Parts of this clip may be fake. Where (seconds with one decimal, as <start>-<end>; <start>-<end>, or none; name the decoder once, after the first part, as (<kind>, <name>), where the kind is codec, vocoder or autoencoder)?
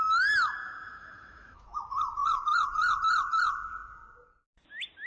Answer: 0.6-1.8 (autoencoder, DAC-VAE)